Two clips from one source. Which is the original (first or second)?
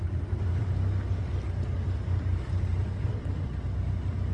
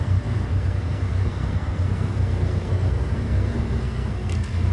first